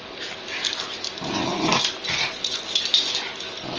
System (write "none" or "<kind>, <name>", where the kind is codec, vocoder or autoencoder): none